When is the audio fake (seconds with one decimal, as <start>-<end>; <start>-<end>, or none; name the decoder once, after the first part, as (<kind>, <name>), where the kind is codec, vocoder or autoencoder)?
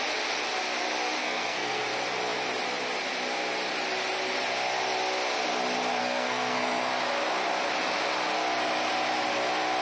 1.2-1.8 (codec, SNAC); 6.0-6.9